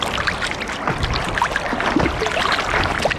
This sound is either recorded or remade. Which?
recorded